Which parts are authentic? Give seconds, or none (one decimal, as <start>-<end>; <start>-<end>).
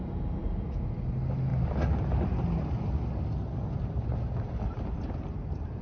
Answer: 0.0-5.8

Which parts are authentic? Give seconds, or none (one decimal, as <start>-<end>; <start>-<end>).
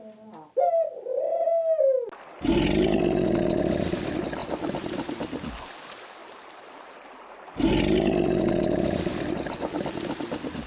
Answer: 0.0-4.4; 5.5-6.2; 7.8-10.7